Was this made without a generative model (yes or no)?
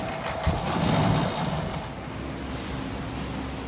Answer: yes